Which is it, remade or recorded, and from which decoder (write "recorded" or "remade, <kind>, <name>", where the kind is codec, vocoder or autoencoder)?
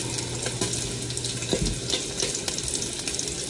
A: recorded